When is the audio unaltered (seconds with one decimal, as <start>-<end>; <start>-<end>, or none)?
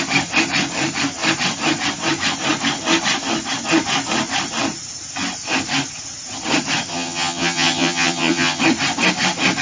0.0-6.9; 8.6-9.6